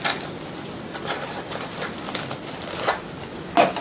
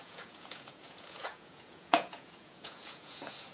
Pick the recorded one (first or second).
first